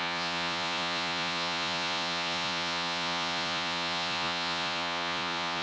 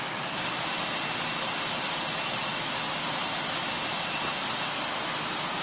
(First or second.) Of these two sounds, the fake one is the first